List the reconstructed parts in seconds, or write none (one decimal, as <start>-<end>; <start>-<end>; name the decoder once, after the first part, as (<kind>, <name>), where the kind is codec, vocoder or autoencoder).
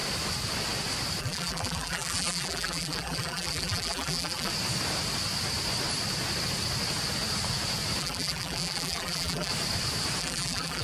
1.2-4.5 (vocoder, BigVGAN v2); 8.0-9.5; 10.2-10.8